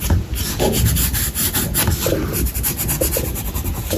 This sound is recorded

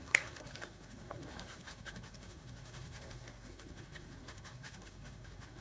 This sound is remade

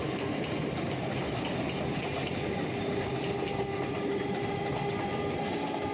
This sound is recorded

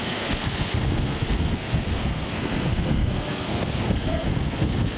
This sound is remade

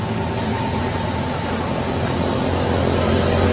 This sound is recorded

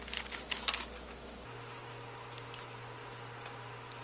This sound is recorded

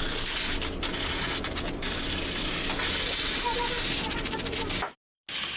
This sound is recorded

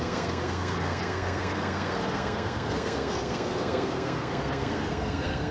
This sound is remade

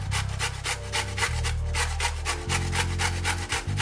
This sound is recorded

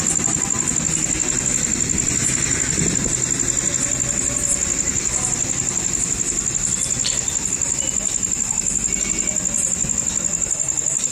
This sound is recorded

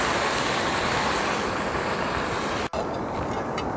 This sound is recorded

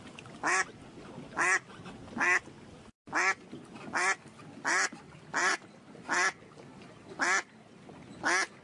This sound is recorded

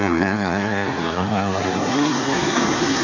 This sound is remade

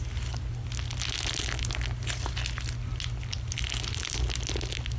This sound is recorded